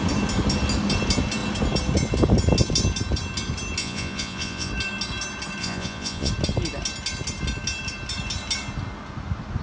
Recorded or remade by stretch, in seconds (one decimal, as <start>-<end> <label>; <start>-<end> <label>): 0.0-3.8 recorded; 3.8-4.7 remade; 4.7-5.6 recorded; 5.6-6.3 remade; 6.3-9.6 recorded